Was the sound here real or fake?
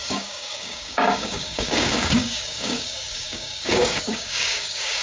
fake